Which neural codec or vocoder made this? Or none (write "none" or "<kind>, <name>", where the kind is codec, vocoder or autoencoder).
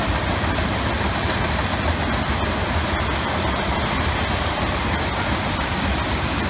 none